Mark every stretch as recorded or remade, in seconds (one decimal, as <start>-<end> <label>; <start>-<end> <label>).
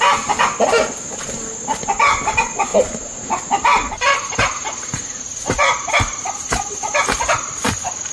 0.0-2.7 recorded; 2.7-5.9 remade; 5.9-8.1 recorded